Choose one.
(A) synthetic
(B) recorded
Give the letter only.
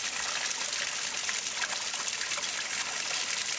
B